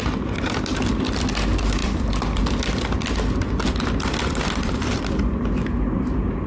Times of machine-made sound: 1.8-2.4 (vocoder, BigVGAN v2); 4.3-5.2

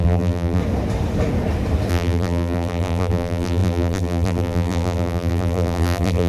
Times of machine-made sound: 0.0-0.6 (vocoder, BigVGAN v2); 1.9-6.3

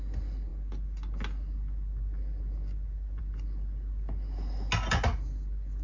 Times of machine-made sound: none